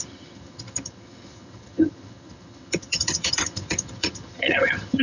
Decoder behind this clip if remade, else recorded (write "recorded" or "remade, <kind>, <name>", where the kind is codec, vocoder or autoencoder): remade, vocoder, HiFi-GAN